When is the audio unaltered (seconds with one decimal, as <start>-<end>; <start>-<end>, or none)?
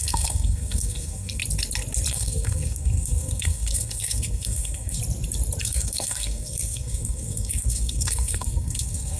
1.4-2.1; 5.0-5.6